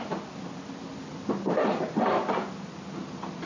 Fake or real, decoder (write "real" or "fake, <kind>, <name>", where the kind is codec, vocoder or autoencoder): real